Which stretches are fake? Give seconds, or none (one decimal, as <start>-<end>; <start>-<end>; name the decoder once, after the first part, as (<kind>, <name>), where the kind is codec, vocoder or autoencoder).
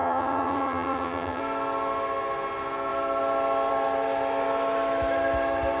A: 0.0-1.4 (vocoder, HiFi-GAN)